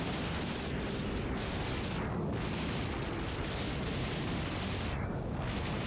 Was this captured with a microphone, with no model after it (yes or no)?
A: yes